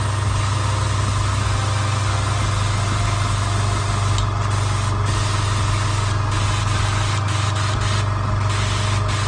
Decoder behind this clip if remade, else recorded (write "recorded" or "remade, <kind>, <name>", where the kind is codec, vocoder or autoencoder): recorded